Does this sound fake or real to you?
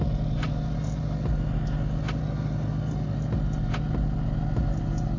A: real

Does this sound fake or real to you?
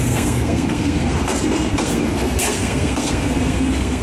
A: fake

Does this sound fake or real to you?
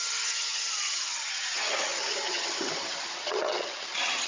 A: fake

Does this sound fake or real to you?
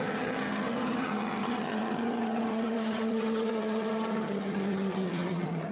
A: fake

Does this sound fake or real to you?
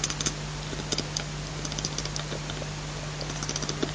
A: real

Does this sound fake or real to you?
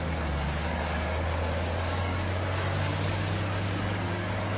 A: fake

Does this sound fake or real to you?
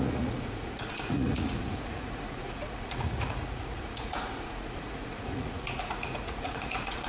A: fake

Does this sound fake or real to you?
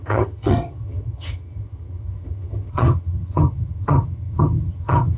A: fake